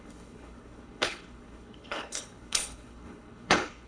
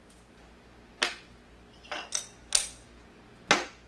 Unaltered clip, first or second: second